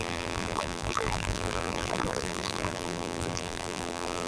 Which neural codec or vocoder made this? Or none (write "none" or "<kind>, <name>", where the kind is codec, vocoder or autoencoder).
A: vocoder, BigVGAN v2